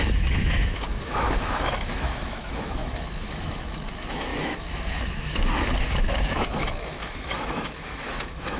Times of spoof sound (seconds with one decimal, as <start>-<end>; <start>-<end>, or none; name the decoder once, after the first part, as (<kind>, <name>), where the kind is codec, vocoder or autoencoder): 0.0-8.6 (autoencoder, DAC-VAE)